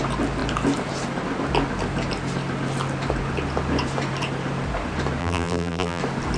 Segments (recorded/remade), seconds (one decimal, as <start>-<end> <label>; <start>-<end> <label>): 0.0-5.2 recorded; 5.2-6.0 remade; 6.0-6.4 recorded